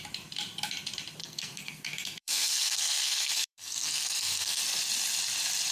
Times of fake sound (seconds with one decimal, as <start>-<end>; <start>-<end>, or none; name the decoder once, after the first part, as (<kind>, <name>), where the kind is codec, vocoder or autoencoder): 1.2-4.6 (codec, SNAC)